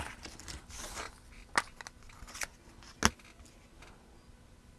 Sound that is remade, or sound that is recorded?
recorded